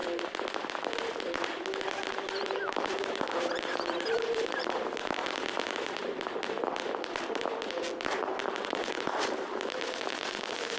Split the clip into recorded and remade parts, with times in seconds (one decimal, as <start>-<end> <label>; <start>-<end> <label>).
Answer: 0.0-2.1 recorded; 2.1-5.2 remade; 5.2-8.1 recorded; 8.1-10.8 remade